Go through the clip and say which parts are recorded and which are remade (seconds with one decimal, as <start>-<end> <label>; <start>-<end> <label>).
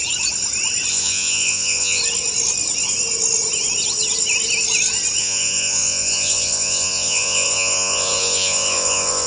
0.0-0.9 recorded; 0.9-2.0 remade; 2.0-5.2 recorded; 5.2-9.3 remade